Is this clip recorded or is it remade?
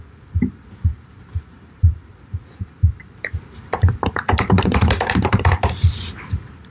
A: remade